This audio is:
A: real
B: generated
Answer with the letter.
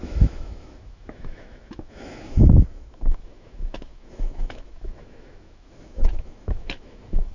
B